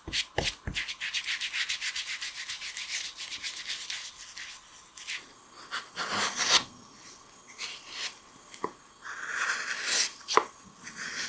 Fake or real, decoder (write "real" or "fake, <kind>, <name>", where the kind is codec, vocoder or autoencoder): real